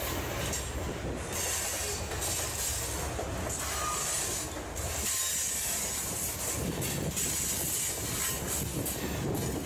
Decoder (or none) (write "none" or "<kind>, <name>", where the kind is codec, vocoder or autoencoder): none